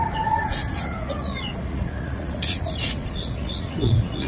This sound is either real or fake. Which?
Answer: fake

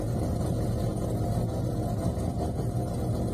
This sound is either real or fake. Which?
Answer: real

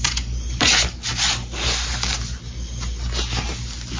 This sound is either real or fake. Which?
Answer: real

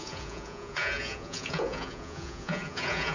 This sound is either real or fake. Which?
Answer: fake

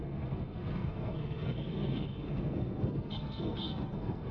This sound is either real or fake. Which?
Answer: fake